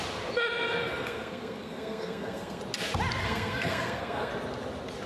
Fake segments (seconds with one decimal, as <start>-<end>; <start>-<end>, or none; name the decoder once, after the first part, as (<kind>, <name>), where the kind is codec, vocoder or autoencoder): 0.8-2.6 (codec, SNAC); 3.2-4.3